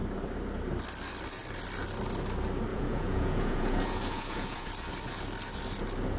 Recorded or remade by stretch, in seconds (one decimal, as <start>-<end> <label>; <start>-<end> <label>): 0.0-2.7 recorded; 2.7-4.7 remade; 4.7-6.2 recorded